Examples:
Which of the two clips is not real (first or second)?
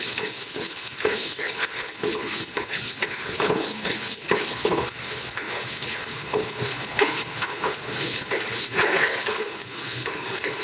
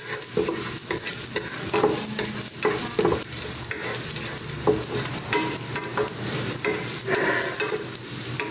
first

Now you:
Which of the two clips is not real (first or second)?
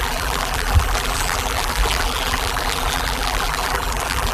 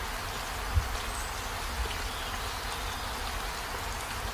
first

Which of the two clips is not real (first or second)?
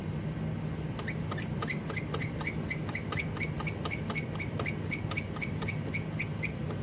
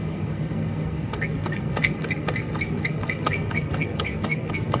second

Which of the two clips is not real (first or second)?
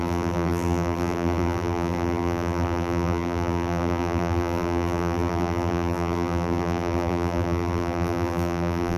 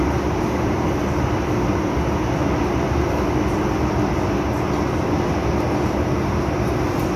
first